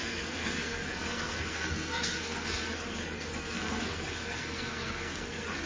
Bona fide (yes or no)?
no